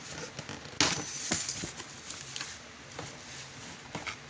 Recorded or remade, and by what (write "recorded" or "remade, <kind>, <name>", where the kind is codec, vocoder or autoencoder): recorded